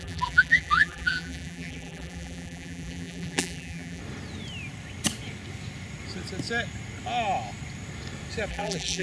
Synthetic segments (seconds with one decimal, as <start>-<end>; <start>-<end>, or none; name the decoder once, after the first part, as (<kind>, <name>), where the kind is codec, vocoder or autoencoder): 0.0-4.0 (vocoder, BigVGAN v2); 8.5-9.0